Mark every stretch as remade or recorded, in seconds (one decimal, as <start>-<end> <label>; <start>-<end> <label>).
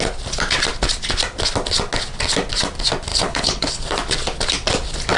0.0-3.1 recorded; 3.1-3.8 remade; 3.8-5.2 recorded